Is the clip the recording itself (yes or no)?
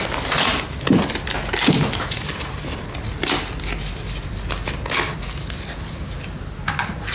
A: yes